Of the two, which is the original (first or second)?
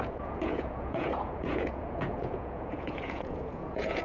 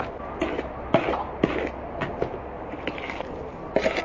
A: second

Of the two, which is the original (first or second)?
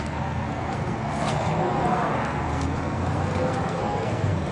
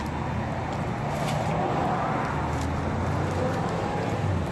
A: second